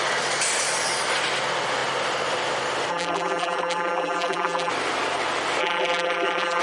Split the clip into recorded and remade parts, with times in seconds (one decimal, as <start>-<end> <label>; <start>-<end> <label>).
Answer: 0.0-2.9 recorded; 2.9-4.7 remade; 4.7-5.6 recorded; 5.6-6.6 remade